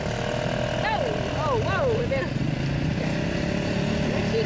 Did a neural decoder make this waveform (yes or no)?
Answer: no